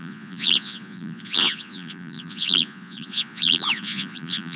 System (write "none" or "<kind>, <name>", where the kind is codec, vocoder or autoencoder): vocoder, Vocos